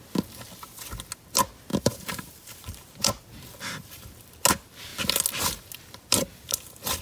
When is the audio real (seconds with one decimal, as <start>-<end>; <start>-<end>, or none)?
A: 0.0-1.7; 3.2-7.0